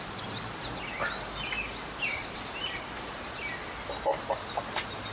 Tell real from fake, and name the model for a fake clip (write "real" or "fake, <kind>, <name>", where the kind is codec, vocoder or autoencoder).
real